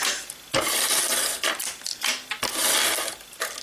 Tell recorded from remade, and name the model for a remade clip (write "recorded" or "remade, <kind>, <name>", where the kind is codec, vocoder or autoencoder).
recorded